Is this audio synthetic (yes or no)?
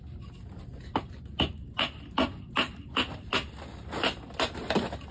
no